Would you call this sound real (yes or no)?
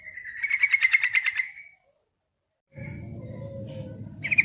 yes